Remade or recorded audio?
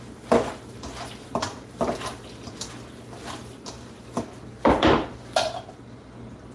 remade